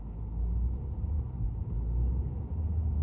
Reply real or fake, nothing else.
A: real